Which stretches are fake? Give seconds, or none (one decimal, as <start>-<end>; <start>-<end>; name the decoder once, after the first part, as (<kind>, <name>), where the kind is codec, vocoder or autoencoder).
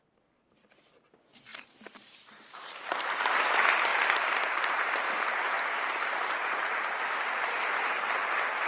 1.5-3.4 (vocoder, BigVGAN v2); 3.9-8.2